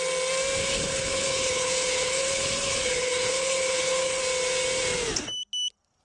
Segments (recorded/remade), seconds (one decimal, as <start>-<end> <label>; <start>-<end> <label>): 0.0-0.6 recorded; 0.6-4.2 remade; 4.2-6.0 recorded